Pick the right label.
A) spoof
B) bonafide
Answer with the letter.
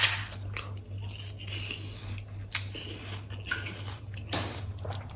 B